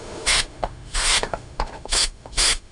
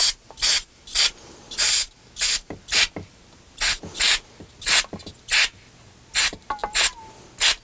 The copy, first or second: first